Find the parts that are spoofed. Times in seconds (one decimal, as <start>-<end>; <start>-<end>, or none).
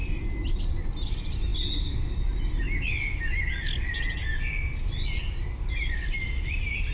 none